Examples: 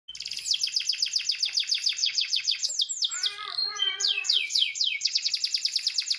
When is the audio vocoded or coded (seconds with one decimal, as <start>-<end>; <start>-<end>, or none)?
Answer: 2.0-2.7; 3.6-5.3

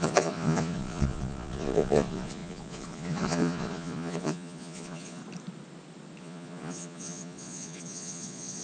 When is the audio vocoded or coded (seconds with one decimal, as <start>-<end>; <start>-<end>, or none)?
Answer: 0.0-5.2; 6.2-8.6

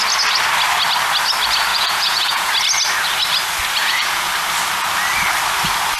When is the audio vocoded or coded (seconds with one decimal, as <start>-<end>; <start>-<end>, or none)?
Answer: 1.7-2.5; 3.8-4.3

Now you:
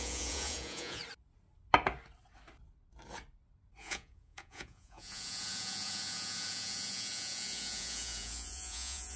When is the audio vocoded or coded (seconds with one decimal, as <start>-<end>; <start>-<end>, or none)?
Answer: 0.0-1.0; 3.8-9.2

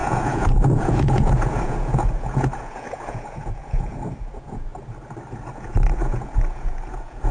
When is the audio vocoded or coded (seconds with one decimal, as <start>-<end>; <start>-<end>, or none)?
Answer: 0.0-4.7; 5.3-7.3

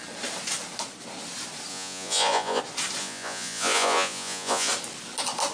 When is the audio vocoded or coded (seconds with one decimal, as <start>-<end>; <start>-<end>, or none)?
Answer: 1.7-2.6; 3.0-4.7